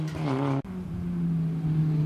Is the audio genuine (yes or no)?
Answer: yes